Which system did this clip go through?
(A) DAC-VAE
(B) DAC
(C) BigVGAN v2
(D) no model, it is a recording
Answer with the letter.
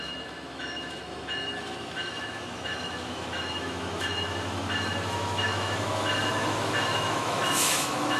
A